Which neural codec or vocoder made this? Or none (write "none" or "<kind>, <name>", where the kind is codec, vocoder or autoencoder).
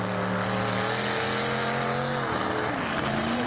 none